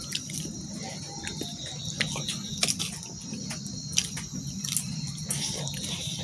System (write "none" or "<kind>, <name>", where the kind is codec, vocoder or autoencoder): none